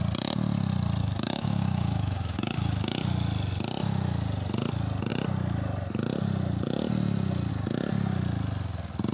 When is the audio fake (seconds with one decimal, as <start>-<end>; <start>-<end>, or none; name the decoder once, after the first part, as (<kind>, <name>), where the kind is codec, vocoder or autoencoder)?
1.0-3.1 (codec, DAC)